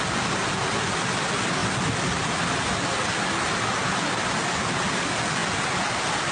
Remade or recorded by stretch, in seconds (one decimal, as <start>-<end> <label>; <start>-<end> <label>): 0.0-6.3 recorded